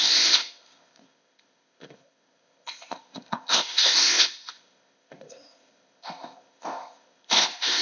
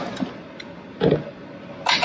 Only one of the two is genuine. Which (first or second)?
second